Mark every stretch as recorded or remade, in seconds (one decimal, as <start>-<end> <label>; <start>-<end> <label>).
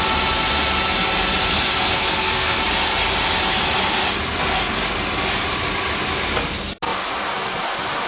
0.0-1.5 recorded; 1.5-2.6 remade; 2.6-8.1 recorded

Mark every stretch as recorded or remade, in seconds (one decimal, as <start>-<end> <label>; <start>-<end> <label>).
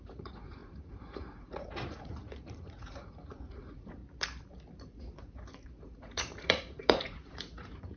0.0-4.0 remade; 4.0-4.8 recorded; 4.8-8.0 remade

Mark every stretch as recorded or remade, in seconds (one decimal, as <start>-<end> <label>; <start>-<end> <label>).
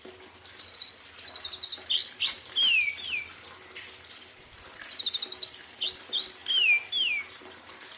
0.0-8.0 recorded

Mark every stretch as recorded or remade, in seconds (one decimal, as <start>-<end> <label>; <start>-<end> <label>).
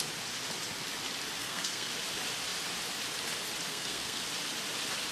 0.0-1.4 recorded; 1.4-1.9 remade; 1.9-3.7 recorded; 3.7-4.2 remade; 4.2-5.1 recorded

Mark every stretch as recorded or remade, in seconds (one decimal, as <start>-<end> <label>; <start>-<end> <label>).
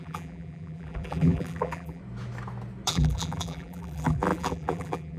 0.0-2.0 remade; 2.0-2.9 recorded; 2.9-5.2 remade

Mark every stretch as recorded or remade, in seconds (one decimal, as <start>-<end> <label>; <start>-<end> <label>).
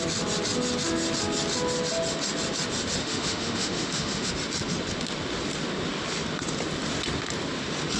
0.0-3.0 recorded; 3.0-4.3 remade; 4.3-8.0 recorded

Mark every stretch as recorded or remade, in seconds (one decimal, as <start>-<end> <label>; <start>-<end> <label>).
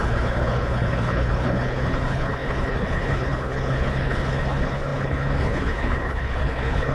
0.0-6.9 remade